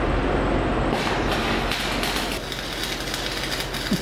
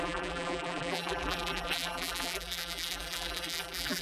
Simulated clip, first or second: second